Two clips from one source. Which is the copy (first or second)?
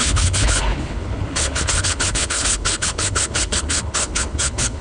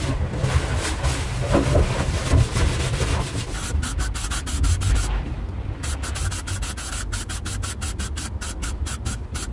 first